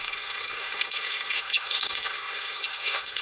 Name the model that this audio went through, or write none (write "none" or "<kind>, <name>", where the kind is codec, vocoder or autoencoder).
codec, SNAC